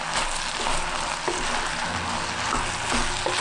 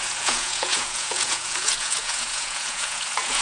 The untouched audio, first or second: first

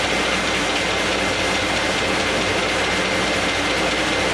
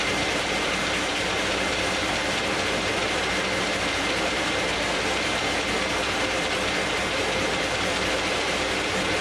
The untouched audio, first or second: first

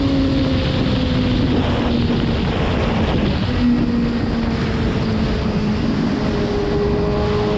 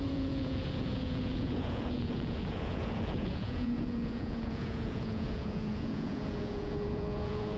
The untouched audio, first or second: first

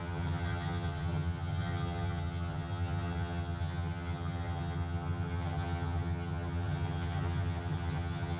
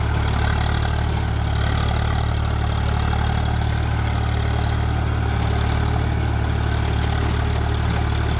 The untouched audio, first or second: second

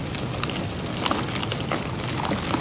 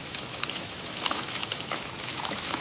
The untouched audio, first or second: first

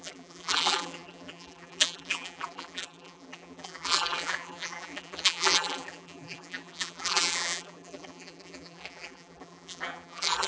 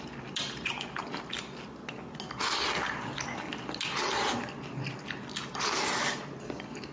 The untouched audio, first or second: second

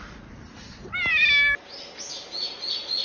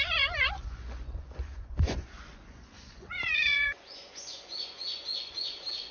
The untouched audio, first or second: first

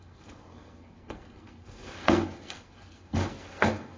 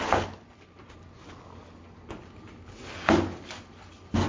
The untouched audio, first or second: second